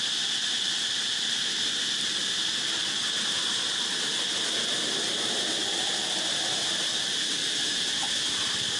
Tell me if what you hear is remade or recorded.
recorded